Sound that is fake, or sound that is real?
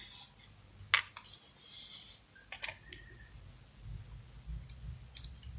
real